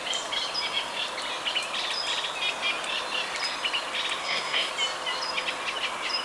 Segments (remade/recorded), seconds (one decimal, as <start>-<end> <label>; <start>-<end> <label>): 0.0-4.2 recorded; 4.2-4.7 remade; 4.7-6.2 recorded